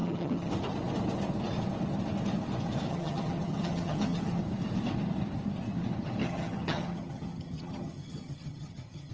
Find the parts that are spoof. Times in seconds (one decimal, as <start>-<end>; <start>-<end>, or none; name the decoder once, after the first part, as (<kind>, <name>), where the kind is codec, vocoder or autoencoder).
0.0-0.5 (vocoder, HiFi-GAN); 2.9-4.4; 6.2-9.1